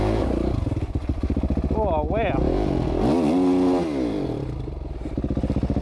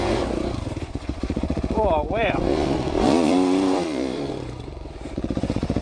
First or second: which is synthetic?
second